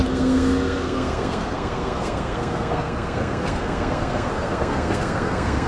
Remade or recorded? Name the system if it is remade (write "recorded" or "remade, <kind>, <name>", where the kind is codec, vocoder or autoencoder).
remade, codec, SNAC